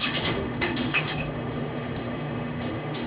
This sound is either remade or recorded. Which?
remade